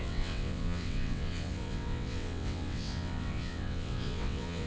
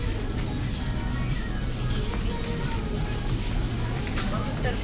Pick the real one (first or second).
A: second